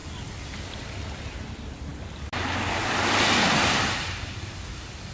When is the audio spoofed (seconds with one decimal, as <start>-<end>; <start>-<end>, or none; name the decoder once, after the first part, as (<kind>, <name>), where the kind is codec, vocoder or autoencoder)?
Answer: 0.0-1.9 (vocoder, BigVGAN v2); 3.6-5.1